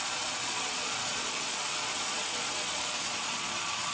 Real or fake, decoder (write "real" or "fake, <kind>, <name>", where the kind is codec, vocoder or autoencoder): fake, vocoder, Vocos